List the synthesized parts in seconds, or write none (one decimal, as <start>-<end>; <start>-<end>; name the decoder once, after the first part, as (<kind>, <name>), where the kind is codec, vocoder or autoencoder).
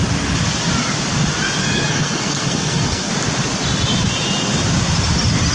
1.6-3.1 (codec, SNAC)